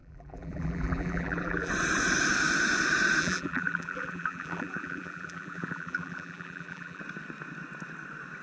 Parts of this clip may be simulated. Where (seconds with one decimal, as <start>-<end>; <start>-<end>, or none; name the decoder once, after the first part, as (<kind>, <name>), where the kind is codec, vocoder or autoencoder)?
0.0-1.7 (vocoder, BigVGAN v2); 3.2-7.0